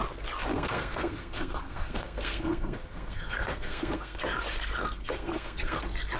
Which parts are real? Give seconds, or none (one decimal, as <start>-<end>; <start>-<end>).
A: 0.0-0.5; 4.2-4.8; 5.8-6.2